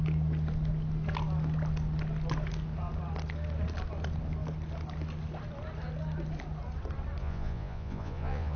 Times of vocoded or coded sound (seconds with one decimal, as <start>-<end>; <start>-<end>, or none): 7.2-8.6